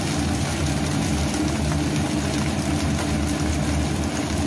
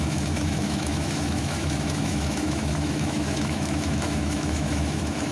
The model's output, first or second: second